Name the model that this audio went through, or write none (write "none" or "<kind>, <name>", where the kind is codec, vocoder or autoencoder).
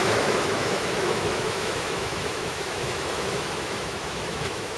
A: autoencoder, DAC-VAE